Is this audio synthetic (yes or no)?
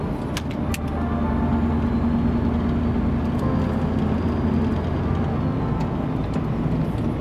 no